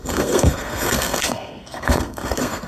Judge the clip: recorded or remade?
remade